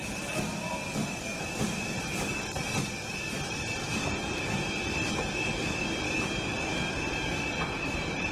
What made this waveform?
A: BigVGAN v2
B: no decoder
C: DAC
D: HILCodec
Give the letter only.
A